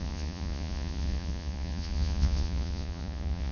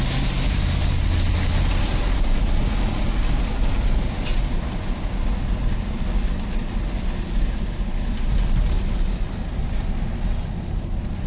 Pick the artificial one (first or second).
first